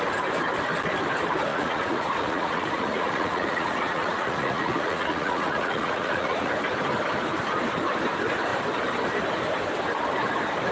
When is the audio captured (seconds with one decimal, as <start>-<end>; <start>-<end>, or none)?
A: 0.0-1.5; 6.5-10.7